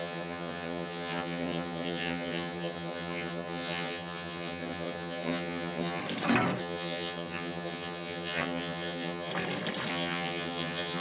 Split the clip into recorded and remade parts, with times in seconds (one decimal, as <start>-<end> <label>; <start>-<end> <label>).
0.0-6.0 remade; 6.0-6.6 recorded; 6.6-9.3 remade; 9.3-9.9 recorded; 9.9-11.0 remade